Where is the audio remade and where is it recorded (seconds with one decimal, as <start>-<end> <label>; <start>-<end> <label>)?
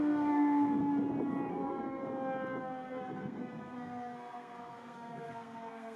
0.0-0.8 remade; 0.8-1.5 recorded; 1.5-2.0 remade; 2.0-2.6 recorded; 2.6-6.0 remade